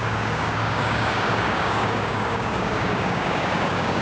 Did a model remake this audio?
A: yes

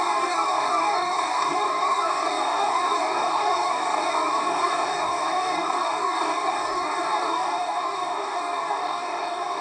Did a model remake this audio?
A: yes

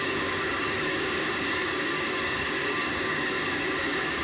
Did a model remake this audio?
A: yes